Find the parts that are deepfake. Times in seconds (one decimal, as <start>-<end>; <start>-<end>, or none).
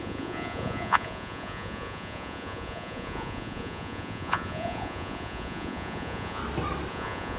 0.0-6.4; 6.9-7.4